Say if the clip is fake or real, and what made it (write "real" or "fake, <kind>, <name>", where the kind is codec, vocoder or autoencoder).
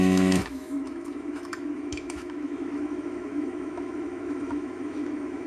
fake, autoencoder, DAC-VAE